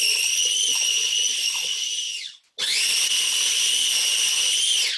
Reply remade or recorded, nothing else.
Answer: recorded